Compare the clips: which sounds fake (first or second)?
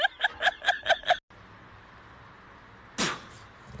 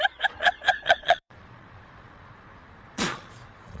second